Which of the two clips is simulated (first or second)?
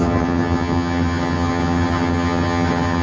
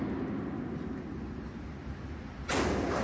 first